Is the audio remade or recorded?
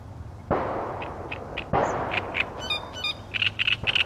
recorded